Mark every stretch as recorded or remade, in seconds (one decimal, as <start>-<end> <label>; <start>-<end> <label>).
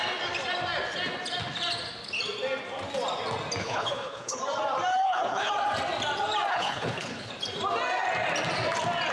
0.0-3.6 recorded; 3.6-4.4 remade; 4.4-4.9 recorded; 4.9-5.5 remade; 5.5-6.5 recorded; 6.5-7.3 remade; 7.3-9.1 recorded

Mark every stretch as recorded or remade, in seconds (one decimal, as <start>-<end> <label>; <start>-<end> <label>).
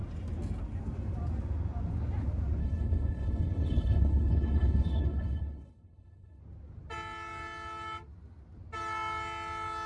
0.0-2.6 recorded; 2.6-6.4 remade; 6.4-9.9 recorded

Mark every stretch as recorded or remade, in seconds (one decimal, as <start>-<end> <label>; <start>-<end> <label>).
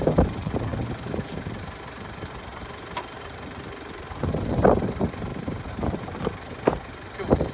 0.0-2.5 recorded; 2.5-4.8 remade; 4.8-5.3 recorded; 5.3-6.4 remade; 6.4-7.5 recorded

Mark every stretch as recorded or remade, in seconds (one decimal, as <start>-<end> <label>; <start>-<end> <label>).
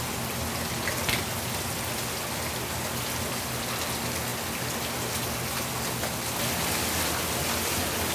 0.0-8.1 recorded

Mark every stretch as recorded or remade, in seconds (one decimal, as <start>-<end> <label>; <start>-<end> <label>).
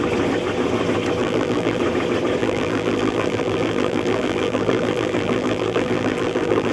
0.0-1.2 recorded; 1.2-1.8 remade; 1.8-2.4 recorded; 2.4-6.7 remade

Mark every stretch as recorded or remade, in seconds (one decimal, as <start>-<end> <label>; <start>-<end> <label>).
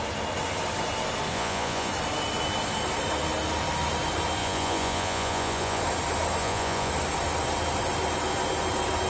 0.0-1.3 recorded; 1.3-1.9 remade; 1.9-4.4 recorded; 4.4-5.8 remade; 5.8-6.4 recorded; 6.4-6.9 remade; 6.9-9.1 recorded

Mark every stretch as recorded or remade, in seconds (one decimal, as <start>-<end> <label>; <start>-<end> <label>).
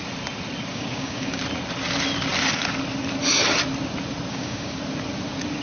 0.0-0.7 recorded; 0.7-1.4 remade; 1.4-4.3 recorded; 4.3-4.8 remade; 4.8-5.6 recorded